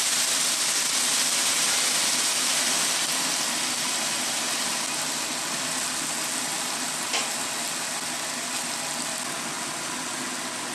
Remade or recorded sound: recorded